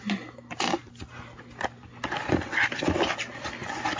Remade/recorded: recorded